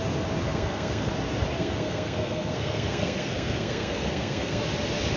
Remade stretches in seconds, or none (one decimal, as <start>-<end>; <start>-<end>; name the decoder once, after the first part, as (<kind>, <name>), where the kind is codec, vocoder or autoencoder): 0.4-1.1 (codec, SNAC); 1.6-4.6

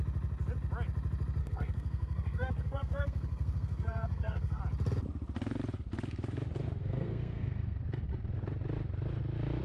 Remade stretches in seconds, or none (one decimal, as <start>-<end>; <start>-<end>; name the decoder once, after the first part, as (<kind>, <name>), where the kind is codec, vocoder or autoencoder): 1.4-4.6 (codec, SNAC); 6.8-7.8